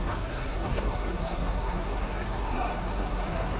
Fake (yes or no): yes